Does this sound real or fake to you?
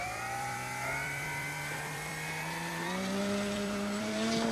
fake